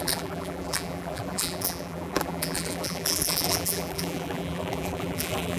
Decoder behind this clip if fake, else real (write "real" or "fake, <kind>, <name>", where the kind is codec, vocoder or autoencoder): fake, vocoder, BigVGAN v2